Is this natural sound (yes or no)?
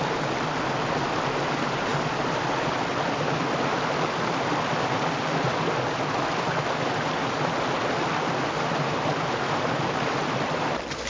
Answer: yes